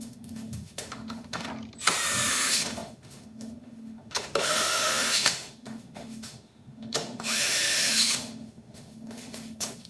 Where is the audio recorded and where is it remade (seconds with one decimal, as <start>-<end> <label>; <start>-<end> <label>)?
0.0-1.5 remade; 1.5-2.3 recorded; 2.3-9.9 remade

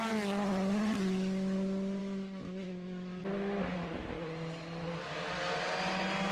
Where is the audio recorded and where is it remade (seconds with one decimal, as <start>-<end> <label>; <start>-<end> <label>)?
0.0-2.0 recorded; 2.0-3.2 remade; 3.2-6.3 recorded

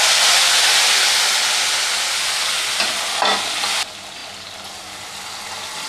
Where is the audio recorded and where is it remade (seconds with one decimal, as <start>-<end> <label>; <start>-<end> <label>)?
0.0-5.9 recorded

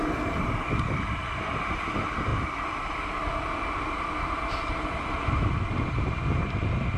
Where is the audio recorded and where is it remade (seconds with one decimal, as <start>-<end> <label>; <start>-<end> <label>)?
0.0-7.0 recorded

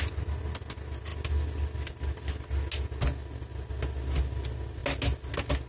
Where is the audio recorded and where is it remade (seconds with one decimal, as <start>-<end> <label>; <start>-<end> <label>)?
0.0-5.7 recorded

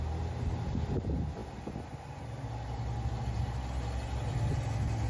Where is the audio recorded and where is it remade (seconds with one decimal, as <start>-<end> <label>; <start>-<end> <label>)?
0.0-5.1 recorded

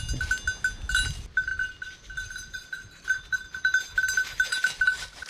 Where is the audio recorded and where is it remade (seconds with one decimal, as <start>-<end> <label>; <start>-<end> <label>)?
0.0-5.3 recorded